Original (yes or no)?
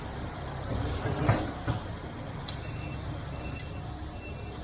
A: yes